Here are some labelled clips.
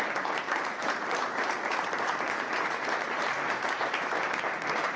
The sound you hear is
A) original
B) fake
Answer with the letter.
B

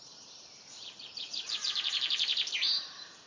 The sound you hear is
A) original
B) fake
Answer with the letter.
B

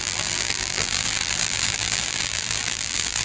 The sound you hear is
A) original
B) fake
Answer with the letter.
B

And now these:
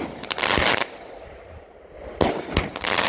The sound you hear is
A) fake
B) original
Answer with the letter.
B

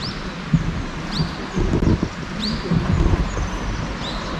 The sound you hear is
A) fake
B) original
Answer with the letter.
B